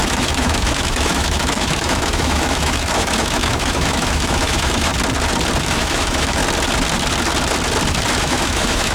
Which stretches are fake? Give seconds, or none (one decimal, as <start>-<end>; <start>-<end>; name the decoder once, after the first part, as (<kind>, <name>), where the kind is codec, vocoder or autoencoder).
0.0-4.9 (autoencoder, DAC-VAE); 5.6-6.4; 8.2-8.9